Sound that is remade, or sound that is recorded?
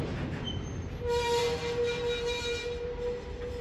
remade